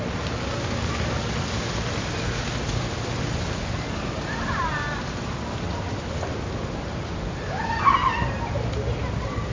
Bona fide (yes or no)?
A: yes